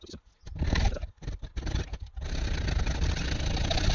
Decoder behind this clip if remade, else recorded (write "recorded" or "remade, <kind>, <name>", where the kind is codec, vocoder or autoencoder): recorded